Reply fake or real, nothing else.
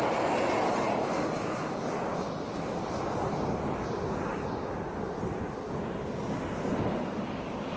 real